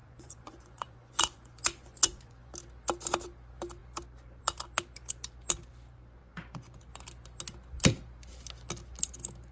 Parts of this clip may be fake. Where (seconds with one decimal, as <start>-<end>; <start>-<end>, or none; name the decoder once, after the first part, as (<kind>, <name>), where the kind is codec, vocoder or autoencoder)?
0.0-2.5 (vocoder, Vocos); 6.2-6.8

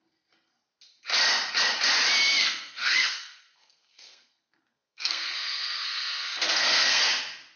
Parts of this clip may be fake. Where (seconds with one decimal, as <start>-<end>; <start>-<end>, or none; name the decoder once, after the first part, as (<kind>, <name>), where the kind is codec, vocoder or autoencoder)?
2.4-7.0 (codec, SNAC)

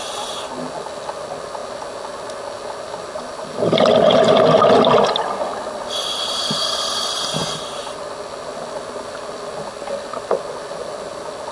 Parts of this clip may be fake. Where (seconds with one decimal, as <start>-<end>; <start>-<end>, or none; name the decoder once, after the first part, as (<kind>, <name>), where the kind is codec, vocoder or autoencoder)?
none

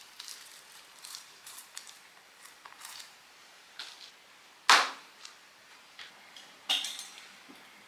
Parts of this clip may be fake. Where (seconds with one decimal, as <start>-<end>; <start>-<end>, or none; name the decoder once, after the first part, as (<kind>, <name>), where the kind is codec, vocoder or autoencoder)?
0.0-3.8 (vocoder, BigVGAN v2); 5.0-7.9

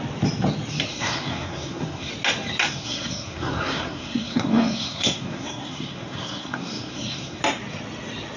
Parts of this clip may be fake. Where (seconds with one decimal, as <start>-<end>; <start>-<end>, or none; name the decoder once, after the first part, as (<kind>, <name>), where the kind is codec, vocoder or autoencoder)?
0.9-2.1 (codec, SNAC); 2.7-7.4

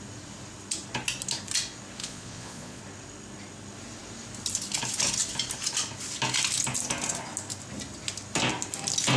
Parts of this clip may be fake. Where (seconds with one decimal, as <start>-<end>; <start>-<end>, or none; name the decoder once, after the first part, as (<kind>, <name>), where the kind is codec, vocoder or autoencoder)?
2.0-2.8 (vocoder, Vocos)

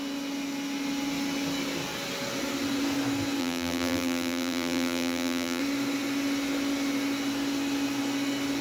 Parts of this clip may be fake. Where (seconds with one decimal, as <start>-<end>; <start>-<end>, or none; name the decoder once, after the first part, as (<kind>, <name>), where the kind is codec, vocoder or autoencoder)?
3.4-5.6 (vocoder, BigVGAN v2)

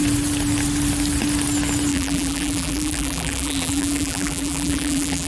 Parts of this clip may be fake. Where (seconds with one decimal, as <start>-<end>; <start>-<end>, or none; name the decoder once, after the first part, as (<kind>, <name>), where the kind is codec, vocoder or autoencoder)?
1.9-5.3 (vocoder, BigVGAN v2)